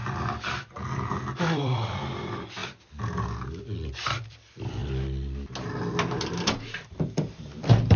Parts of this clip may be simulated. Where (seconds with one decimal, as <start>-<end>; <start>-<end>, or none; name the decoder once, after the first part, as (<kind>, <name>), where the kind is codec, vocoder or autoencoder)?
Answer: 1.4-2.6 (vocoder, BigVGAN v2); 3.6-4.8; 6.7-8.0